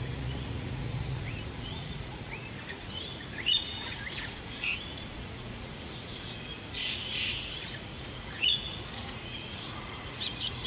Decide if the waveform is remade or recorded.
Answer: remade